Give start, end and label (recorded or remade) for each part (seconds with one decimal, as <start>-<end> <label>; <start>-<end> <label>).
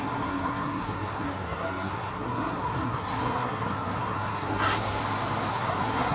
0.0-5.0 remade; 5.0-5.5 recorded; 5.5-6.1 remade